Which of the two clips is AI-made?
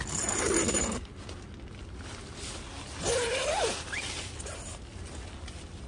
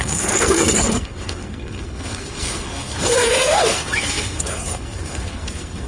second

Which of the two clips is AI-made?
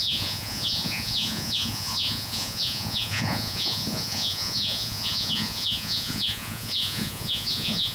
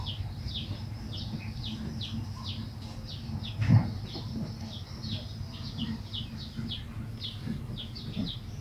first